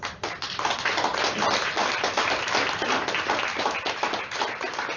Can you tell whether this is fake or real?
real